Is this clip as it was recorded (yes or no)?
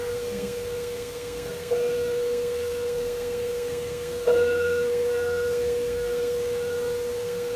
no